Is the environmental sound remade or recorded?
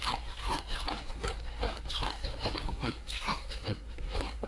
remade